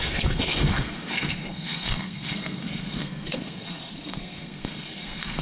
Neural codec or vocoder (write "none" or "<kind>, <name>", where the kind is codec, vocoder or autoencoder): codec, SNAC